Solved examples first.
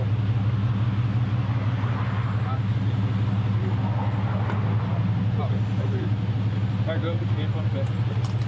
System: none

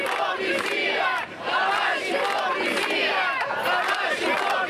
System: none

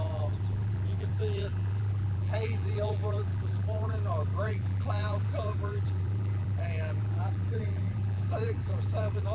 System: vocoder, BigVGAN v2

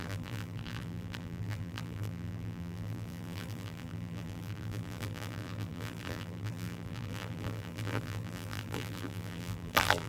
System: vocoder, BigVGAN v2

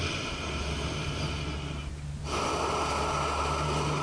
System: none